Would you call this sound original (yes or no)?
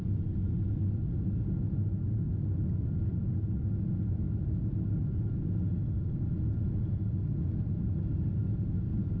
yes